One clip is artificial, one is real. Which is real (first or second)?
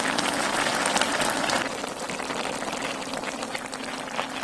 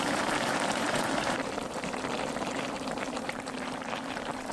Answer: first